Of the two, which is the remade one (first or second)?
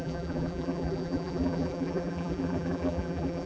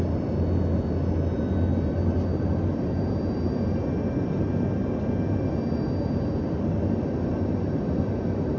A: first